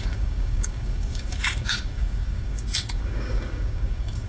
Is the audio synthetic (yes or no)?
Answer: yes